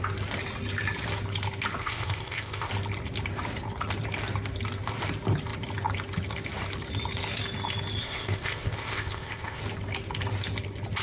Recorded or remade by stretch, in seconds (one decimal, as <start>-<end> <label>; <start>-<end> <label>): 0.0-1.8 recorded; 1.8-2.7 remade; 2.7-8.0 recorded; 8.0-9.6 remade; 9.6-11.0 recorded